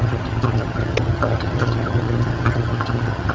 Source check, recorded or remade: remade